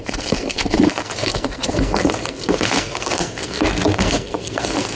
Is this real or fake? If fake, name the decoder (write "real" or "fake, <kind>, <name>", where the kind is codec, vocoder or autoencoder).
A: fake, codec, SNAC